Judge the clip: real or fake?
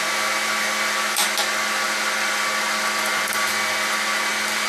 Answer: real